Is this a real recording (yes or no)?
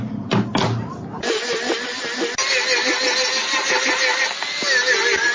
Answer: yes